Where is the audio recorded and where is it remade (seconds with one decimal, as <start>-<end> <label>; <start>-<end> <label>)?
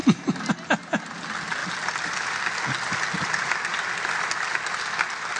0.0-0.5 remade; 0.5-5.4 recorded